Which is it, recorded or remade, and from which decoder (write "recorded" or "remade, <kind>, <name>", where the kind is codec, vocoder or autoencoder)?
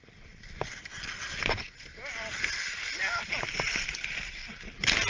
recorded